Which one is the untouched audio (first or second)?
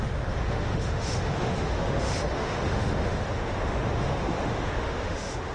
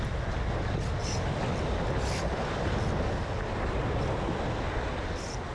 second